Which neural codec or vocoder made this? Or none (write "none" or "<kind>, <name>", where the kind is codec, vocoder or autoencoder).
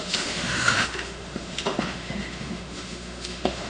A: autoencoder, DAC-VAE